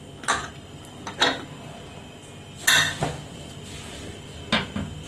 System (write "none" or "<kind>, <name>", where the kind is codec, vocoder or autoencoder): none